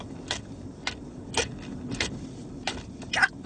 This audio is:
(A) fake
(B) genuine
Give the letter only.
B